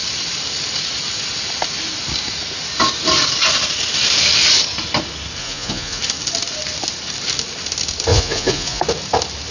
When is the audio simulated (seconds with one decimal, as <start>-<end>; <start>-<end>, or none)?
5.4-6.0; 8.1-8.8